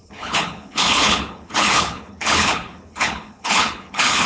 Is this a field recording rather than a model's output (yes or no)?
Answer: no